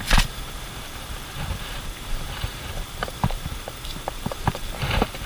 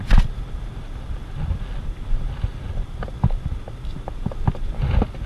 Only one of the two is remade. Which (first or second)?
first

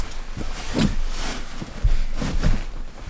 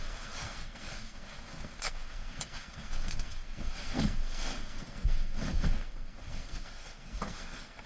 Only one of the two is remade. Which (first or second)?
second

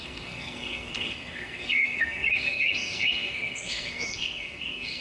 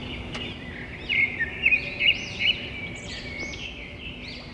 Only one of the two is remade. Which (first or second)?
first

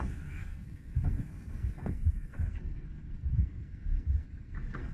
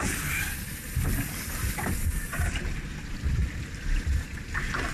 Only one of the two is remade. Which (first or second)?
first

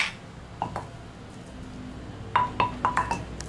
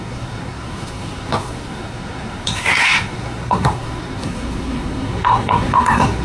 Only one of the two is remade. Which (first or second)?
second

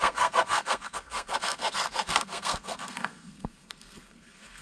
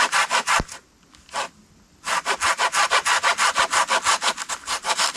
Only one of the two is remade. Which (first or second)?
first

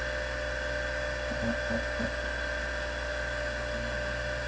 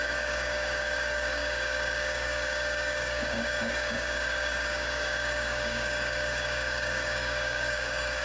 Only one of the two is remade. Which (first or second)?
second